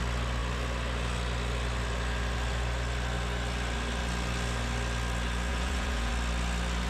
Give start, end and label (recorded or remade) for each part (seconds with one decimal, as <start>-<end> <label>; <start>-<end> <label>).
0.0-5.5 recorded; 5.5-6.1 remade; 6.1-6.9 recorded